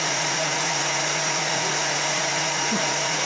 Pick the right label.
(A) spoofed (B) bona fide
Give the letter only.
A